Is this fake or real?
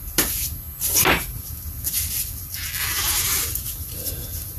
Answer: real